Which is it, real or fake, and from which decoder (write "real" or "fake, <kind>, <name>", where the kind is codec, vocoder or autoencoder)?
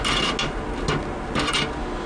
real